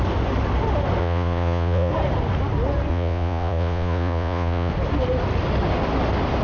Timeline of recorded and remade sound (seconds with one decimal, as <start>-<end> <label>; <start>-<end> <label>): 0.0-1.0 recorded; 1.0-1.9 remade; 1.9-2.9 recorded; 2.9-4.7 remade; 4.7-6.4 recorded